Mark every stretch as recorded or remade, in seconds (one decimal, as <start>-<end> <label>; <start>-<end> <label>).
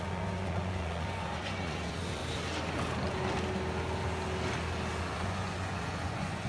0.0-2.2 remade; 2.2-5.0 recorded; 5.0-6.5 remade